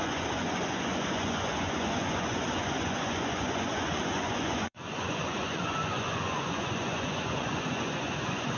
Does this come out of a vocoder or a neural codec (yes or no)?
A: yes